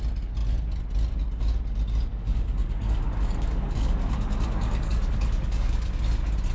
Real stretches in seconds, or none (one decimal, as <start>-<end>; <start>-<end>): 0.0-2.1; 6.0-6.5